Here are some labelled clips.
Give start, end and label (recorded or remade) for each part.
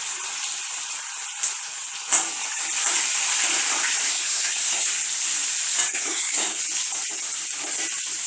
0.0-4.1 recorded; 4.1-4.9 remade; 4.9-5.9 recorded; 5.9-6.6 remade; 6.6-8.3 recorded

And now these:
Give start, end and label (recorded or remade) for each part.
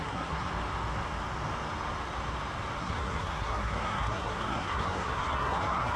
0.0-0.5 remade; 0.5-2.8 recorded; 2.8-6.0 remade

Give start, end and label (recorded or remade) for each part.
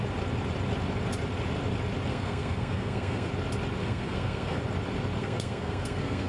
0.0-2.1 recorded; 2.1-3.3 remade; 3.3-3.8 recorded; 3.8-4.6 remade; 4.6-5.2 recorded; 5.2-6.3 remade